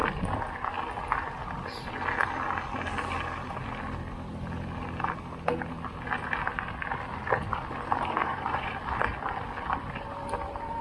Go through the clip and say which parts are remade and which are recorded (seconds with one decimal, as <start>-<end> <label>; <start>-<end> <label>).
0.0-8.2 recorded; 8.2-8.7 remade; 8.7-10.8 recorded